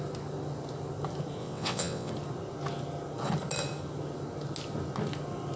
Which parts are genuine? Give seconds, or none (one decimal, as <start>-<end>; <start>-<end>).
0.0-1.4; 2.1-5.6